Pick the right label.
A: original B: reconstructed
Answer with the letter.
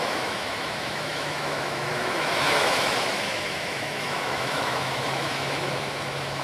B